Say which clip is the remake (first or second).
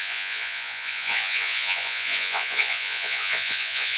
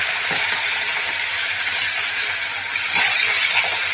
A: first